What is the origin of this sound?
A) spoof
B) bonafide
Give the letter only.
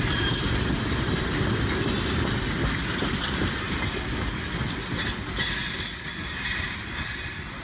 B